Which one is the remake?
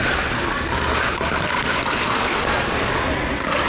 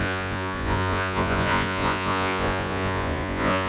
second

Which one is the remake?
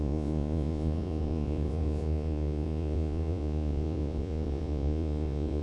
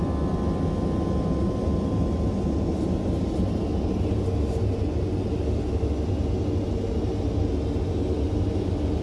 first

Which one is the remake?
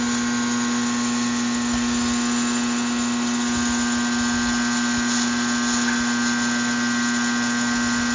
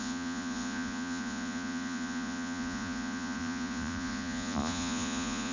second